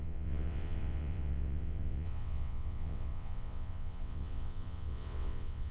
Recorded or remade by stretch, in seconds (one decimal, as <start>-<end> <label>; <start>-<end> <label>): 0.0-5.7 remade